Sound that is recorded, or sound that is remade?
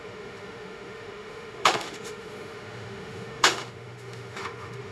remade